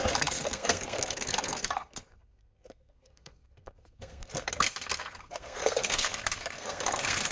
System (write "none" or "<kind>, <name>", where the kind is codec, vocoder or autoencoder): codec, SNAC